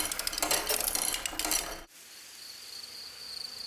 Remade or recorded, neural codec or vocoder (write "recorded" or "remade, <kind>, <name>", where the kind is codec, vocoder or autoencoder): recorded